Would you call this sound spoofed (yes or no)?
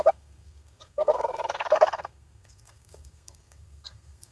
yes